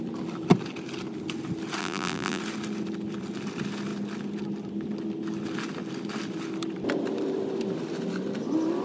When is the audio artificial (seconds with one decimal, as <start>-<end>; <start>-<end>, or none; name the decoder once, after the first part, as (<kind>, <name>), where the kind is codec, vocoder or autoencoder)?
1.8-2.4 (vocoder, BigVGAN v2)